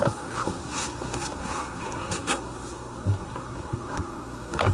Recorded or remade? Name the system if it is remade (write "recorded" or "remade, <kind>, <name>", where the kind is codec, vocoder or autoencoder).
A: remade, codec, SNAC